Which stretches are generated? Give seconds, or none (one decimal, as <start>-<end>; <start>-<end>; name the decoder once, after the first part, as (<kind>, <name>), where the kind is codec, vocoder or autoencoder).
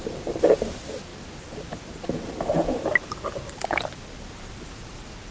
none